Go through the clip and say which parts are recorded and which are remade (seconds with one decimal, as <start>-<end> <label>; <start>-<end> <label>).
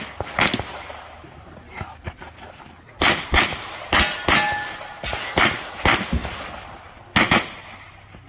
0.0-8.3 recorded